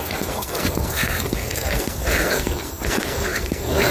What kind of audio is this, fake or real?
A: fake